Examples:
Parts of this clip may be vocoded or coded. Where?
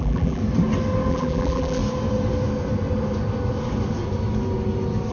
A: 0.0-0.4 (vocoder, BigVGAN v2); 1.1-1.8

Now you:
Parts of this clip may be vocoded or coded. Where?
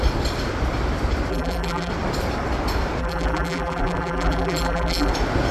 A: 1.3-1.9 (vocoder, BigVGAN v2); 3.0-5.1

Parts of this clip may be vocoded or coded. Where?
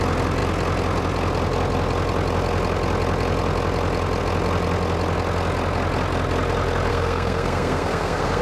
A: 6.9-8.4 (codec, SNAC)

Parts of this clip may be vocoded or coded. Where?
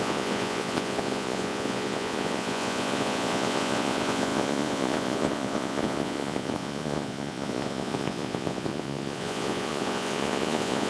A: 0.0-10.9 (vocoder, Vocos)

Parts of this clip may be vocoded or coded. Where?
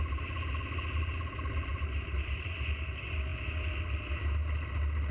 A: 1.7-2.5 (vocoder, BigVGAN v2)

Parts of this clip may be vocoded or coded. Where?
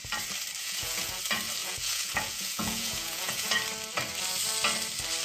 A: 0.6-1.2 (vocoder, Vocos); 1.6-3.5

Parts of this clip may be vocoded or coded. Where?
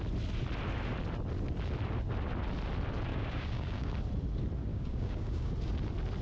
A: 3.1-3.9 (codec, DAC); 4.7-5.5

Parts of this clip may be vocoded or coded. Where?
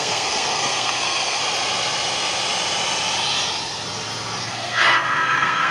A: 0.0-1.4 (codec, SNAC); 4.4-5.7